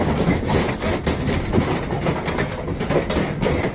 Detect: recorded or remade recorded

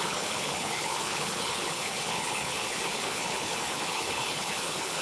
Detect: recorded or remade remade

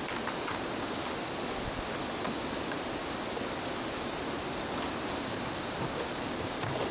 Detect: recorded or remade recorded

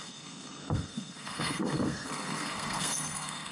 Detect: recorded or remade remade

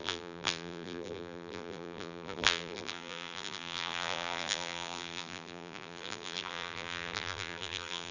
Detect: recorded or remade remade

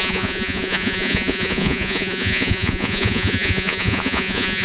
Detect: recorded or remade remade